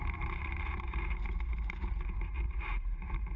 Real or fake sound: fake